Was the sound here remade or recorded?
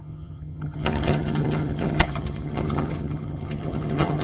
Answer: remade